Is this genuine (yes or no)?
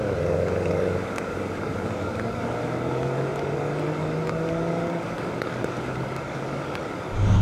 no